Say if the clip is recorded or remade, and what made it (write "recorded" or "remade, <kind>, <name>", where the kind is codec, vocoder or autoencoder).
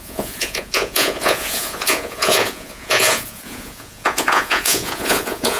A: remade, vocoder, Vocos